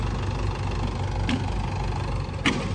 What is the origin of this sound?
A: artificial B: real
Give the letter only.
B